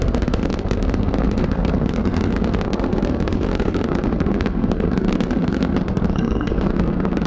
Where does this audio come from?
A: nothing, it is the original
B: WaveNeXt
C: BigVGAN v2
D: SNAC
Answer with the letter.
D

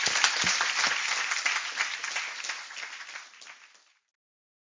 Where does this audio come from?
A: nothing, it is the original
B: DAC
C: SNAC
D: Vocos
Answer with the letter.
A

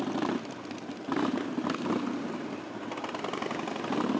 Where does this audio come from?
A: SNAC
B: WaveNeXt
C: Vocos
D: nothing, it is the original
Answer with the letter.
D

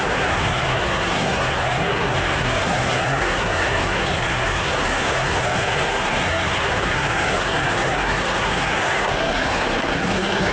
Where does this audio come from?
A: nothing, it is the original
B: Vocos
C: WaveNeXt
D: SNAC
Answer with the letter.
D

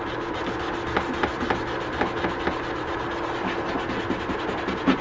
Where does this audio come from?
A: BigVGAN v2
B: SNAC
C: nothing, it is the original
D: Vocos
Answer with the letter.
C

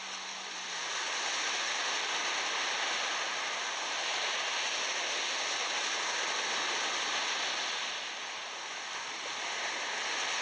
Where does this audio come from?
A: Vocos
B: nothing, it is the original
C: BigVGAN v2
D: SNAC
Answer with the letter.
B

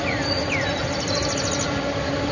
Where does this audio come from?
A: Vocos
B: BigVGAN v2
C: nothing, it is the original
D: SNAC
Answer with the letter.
C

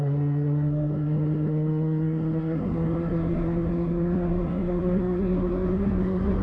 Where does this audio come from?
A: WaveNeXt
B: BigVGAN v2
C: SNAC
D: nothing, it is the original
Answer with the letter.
C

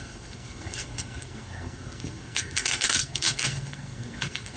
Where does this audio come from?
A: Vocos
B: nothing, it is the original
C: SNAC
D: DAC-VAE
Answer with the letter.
C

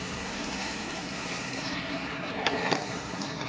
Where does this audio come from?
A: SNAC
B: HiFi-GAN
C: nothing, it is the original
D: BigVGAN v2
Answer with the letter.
A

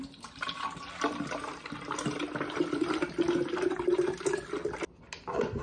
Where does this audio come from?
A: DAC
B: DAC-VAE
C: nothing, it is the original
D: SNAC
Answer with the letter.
C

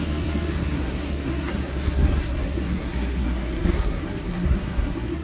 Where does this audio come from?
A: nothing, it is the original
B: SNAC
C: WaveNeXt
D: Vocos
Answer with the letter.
B